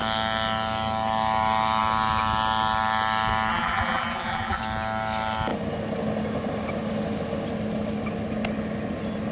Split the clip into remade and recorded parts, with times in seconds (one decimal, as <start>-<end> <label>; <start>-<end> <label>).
0.0-3.5 recorded; 3.5-4.6 remade; 4.6-9.3 recorded